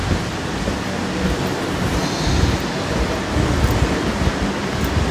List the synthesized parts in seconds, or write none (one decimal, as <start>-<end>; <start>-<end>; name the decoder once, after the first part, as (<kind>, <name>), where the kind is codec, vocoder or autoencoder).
none